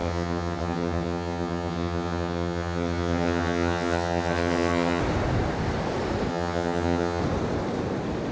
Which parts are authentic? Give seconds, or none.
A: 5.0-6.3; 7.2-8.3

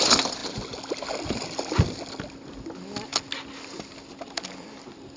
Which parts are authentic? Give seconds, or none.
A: 0.0-5.2

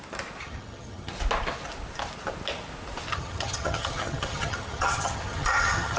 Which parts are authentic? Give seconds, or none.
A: 0.0-0.4; 1.1-3.1